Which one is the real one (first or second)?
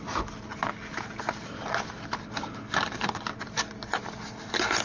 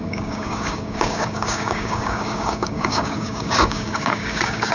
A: first